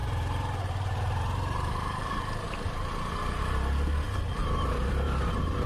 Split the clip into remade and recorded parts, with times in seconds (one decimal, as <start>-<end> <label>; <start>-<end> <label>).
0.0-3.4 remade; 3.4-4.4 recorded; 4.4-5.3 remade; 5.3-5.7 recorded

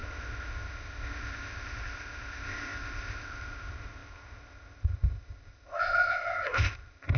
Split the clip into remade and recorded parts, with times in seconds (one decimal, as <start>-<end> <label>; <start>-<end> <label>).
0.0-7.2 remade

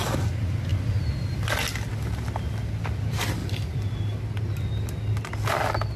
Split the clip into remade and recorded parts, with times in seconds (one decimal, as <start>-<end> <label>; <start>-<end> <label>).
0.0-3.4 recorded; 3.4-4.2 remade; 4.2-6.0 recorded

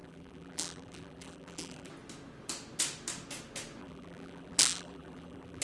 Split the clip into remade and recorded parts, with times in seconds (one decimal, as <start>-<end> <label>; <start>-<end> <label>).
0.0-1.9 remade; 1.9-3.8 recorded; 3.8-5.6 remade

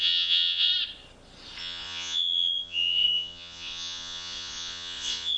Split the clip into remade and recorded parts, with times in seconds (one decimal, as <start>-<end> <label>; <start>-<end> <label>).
0.0-0.7 remade; 0.7-1.6 recorded; 1.6-5.4 remade

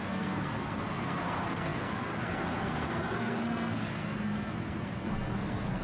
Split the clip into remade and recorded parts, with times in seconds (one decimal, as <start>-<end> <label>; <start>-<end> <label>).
0.0-5.8 remade

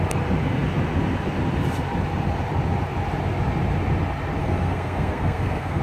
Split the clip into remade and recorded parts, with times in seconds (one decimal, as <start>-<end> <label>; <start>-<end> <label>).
0.0-4.4 recorded; 4.4-5.8 remade